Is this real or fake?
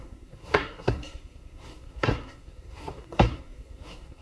fake